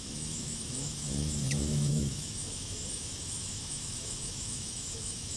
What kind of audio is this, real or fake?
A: fake